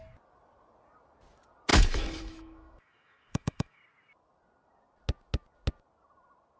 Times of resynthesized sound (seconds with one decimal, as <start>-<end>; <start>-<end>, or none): 1.7-3.8